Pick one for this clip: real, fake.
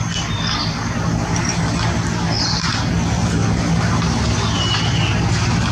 fake